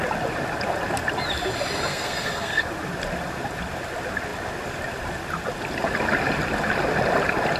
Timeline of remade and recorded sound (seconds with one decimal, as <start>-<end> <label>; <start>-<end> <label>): 0.0-1.9 recorded; 1.9-2.6 remade; 2.6-7.6 recorded